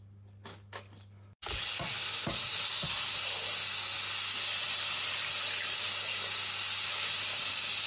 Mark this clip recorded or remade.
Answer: recorded